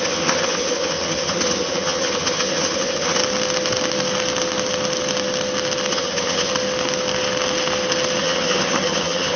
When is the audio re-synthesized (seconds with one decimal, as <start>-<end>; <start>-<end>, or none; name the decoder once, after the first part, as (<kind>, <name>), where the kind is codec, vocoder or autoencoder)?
0.0-3.2 (vocoder, HiFi-GAN); 5.9-6.5; 8.2-9.4

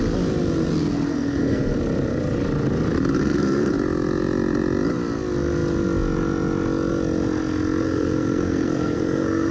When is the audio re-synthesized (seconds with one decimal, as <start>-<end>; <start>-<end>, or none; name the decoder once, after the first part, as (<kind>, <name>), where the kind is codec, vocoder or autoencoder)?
1.1-1.8 (codec, SNAC); 3.2-3.7; 7.8-9.5

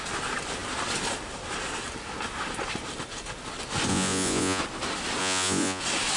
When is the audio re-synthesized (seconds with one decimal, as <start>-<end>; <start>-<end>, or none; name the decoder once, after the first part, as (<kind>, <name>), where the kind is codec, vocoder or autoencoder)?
3.9-4.6 (vocoder, Vocos); 5.2-5.8

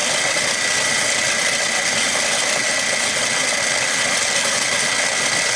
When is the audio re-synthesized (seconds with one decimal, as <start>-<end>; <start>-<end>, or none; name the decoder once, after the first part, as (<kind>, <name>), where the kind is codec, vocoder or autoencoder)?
none